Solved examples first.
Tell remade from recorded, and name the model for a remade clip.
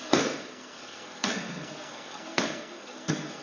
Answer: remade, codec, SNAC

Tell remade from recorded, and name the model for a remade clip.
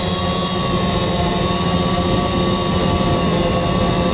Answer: recorded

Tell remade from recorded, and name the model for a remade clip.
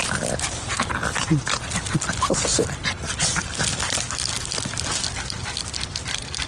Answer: recorded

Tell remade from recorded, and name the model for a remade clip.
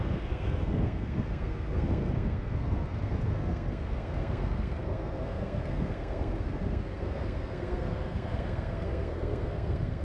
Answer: remade, codec, SNAC